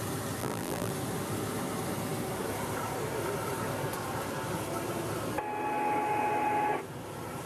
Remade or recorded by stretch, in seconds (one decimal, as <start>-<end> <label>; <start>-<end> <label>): 0.0-0.4 recorded; 0.4-0.9 remade; 0.9-7.5 recorded